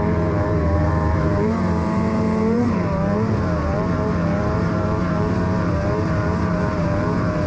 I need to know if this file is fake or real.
fake